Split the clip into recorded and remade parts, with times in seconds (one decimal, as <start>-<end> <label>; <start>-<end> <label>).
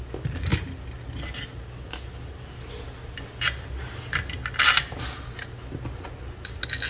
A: 0.0-6.9 recorded